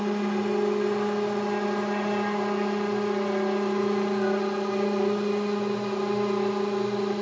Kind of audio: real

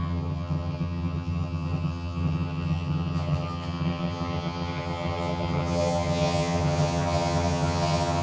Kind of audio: fake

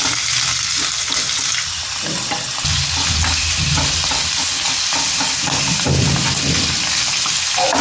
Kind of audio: real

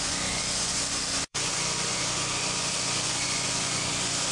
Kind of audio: fake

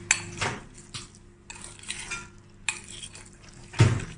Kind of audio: real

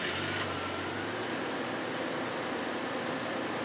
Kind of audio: real